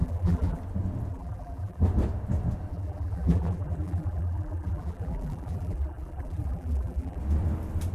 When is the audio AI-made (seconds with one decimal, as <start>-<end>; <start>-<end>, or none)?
0.0-0.6; 1.1-1.8; 2.7-7.2